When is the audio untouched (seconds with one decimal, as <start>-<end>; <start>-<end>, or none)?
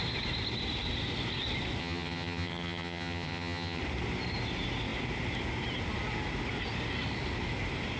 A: 0.0-1.8; 3.8-8.0